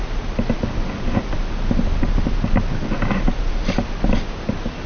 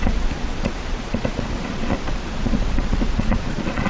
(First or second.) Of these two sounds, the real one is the first